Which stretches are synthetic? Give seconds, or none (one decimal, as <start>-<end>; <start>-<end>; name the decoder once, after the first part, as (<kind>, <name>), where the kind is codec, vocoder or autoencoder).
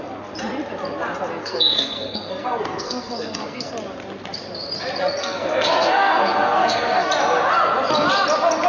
1.4-3.7 (codec, SNAC); 5.2-7.1